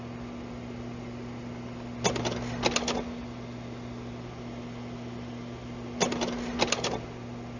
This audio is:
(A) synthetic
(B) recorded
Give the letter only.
B